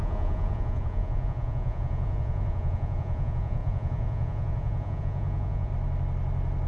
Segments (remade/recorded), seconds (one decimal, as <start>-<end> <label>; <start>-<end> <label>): 0.0-5.7 remade; 5.7-6.7 recorded